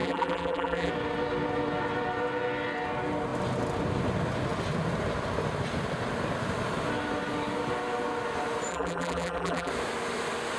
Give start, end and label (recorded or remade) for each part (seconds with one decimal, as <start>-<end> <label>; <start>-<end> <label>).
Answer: 0.0-0.9 remade; 0.9-8.7 recorded; 8.7-9.7 remade; 9.7-10.6 recorded